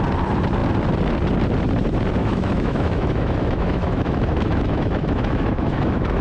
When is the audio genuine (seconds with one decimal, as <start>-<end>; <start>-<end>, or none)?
0.0-2.2